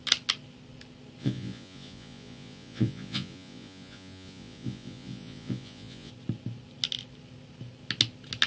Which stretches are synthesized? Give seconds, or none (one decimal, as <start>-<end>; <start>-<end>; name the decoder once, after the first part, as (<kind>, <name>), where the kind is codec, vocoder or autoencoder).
1.2-6.1 (vocoder, Vocos)